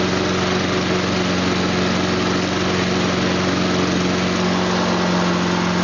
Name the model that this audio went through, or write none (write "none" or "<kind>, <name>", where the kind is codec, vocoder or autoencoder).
none